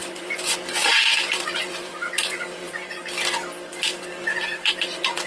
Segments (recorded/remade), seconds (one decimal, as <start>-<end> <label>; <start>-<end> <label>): 0.0-3.0 remade; 3.0-3.7 recorded; 3.7-5.3 remade